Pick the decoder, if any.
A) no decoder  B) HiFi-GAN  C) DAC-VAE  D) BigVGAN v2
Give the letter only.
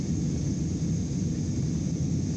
A